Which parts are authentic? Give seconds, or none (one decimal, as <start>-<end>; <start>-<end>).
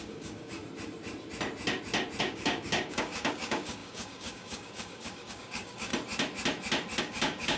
0.6-2.2; 5.9-7.0